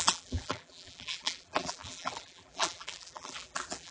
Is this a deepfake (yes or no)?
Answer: yes